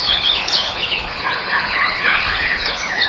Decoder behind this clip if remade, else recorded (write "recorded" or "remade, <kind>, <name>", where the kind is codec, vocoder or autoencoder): remade, codec, HILCodec